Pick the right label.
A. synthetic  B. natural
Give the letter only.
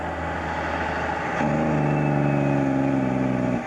B